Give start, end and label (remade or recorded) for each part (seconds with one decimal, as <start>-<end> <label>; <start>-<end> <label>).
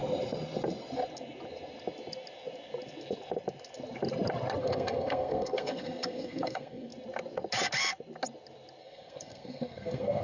0.0-4.6 recorded; 4.6-6.9 remade; 6.9-8.8 recorded; 8.8-10.2 remade